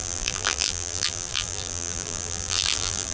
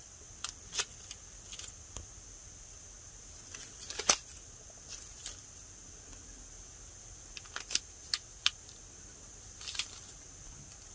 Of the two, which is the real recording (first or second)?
second